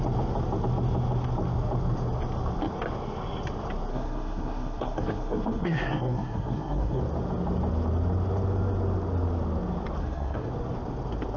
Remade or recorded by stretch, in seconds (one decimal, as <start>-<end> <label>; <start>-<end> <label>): 0.0-3.9 recorded; 3.9-7.0 remade; 7.0-10.0 recorded; 10.0-10.5 remade; 10.5-11.4 recorded